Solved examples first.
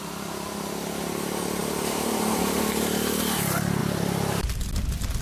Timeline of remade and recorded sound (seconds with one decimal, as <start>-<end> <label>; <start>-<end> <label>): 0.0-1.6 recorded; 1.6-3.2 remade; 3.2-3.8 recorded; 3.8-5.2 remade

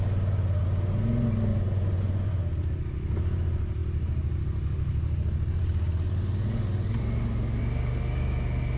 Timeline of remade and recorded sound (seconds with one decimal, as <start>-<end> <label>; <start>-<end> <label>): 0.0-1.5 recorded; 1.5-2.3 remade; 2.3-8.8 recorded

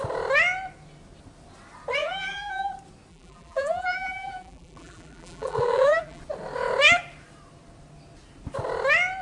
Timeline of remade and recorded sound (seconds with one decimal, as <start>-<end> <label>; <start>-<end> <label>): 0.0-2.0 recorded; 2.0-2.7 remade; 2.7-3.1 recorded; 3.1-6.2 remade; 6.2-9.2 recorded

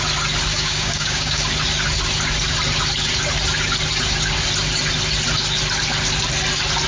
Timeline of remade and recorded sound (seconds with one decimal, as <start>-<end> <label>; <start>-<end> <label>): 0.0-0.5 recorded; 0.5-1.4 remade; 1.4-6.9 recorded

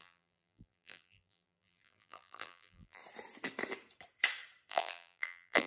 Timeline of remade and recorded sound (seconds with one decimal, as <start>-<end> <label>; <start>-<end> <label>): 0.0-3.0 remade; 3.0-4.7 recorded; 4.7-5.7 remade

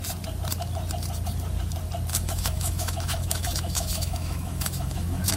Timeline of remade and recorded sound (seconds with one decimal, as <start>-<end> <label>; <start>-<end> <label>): 0.0-2.1 recorded; 2.1-5.4 remade

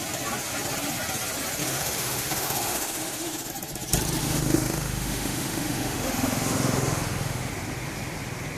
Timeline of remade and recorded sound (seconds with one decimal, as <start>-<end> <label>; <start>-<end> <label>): 0.0-1.6 recorded; 1.6-3.5 remade; 3.5-4.2 recorded; 4.2-7.5 remade; 7.5-8.6 recorded

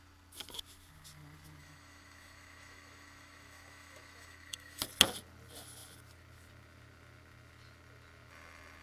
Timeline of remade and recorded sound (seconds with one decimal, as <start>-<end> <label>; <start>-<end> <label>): 0.0-1.6 recorded; 1.6-4.8 remade; 4.8-8.8 recorded